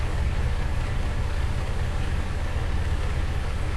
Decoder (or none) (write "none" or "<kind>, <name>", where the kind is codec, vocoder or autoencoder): codec, DAC